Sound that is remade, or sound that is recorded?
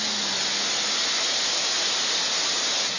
recorded